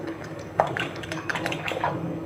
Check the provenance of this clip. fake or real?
fake